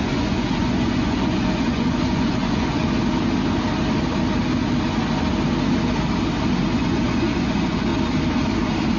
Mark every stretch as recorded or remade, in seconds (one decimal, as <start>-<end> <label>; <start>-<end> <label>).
0.0-2.8 remade; 2.8-6.6 recorded; 6.6-7.9 remade; 7.9-9.0 recorded